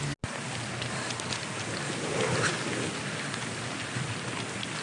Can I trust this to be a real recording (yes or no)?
yes